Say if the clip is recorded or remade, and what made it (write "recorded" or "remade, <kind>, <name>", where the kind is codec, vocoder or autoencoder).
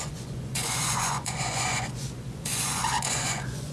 remade, vocoder, Vocos